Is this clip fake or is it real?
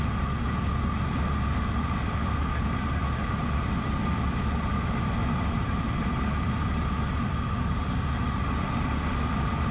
real